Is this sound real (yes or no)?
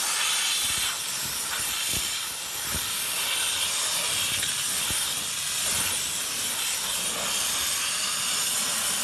yes